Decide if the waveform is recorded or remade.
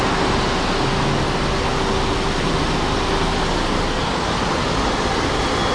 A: recorded